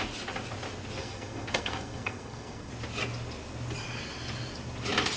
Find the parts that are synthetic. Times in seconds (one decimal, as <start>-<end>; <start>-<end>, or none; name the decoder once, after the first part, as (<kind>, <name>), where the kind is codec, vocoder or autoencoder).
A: 1.0-2.7 (codec, SNAC)